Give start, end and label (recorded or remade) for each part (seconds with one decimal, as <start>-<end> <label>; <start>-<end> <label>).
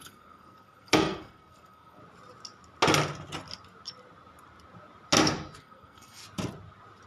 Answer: 0.0-2.0 remade; 2.0-5.6 recorded; 5.6-6.2 remade; 6.2-7.1 recorded